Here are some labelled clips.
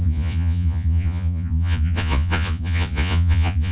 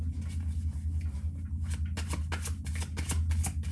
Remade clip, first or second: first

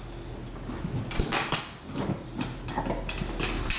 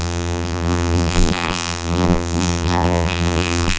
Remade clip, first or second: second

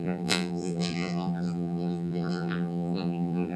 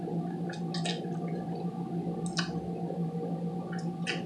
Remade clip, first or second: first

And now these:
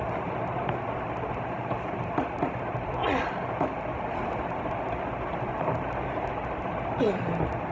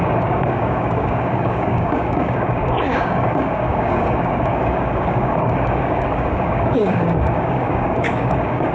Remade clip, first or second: second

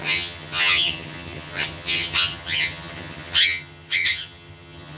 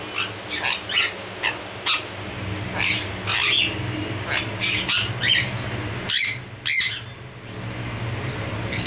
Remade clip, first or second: first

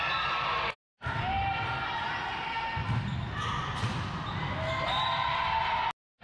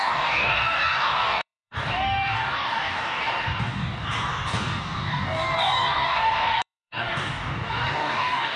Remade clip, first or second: second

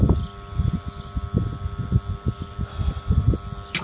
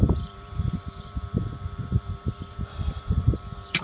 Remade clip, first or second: second